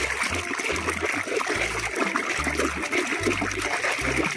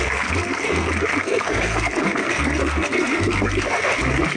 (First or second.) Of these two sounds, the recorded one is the first